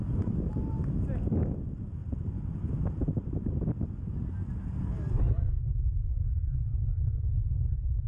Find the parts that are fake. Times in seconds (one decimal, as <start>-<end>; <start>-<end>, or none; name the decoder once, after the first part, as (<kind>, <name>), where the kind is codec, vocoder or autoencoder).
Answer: 6.7-8.1 (vocoder, Vocos)